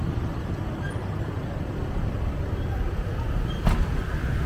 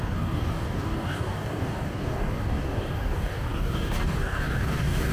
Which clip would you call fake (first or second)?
second